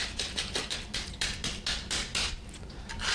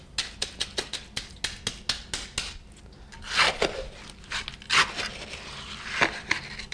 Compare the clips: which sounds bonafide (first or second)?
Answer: second